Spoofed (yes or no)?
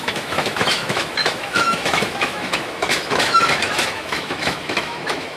yes